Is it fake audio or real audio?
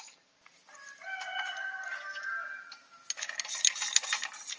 real